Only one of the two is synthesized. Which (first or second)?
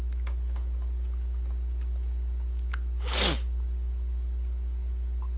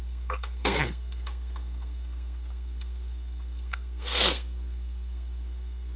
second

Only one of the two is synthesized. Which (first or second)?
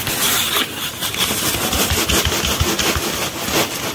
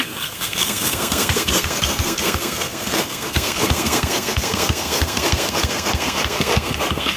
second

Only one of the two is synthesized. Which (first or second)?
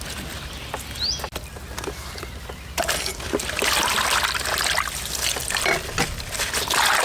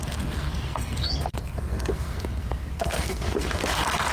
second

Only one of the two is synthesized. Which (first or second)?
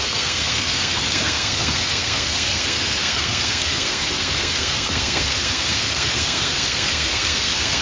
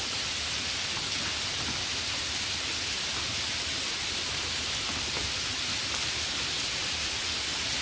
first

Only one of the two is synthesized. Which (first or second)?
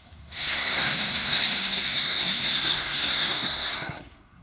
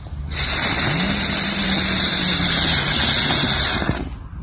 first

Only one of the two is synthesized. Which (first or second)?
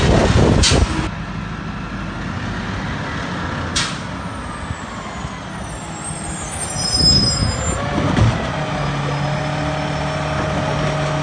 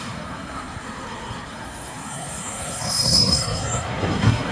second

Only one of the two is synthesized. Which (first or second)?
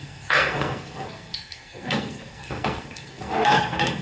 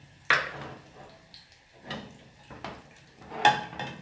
first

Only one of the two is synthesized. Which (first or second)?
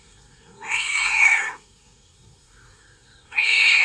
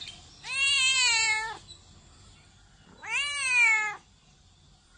first